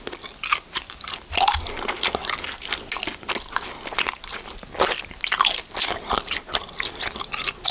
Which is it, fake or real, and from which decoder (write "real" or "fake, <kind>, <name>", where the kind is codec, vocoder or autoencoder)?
real